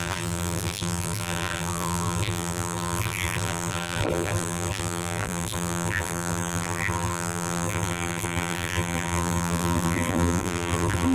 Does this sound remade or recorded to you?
remade